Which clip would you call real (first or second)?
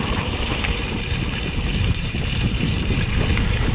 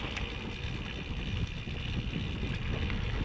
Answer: second